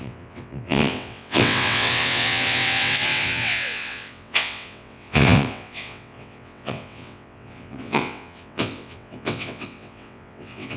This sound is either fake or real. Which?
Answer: fake